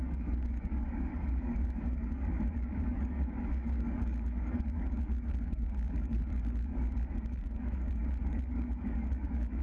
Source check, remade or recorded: remade